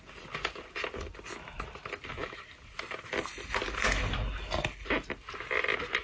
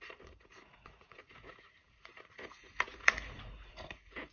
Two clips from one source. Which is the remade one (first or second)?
second